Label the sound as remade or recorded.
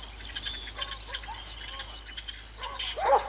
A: recorded